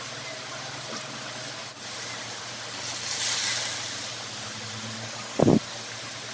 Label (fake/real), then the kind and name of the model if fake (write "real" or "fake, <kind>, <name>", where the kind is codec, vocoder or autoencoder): real